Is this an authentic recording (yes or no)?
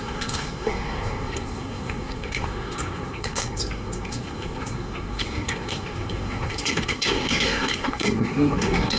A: no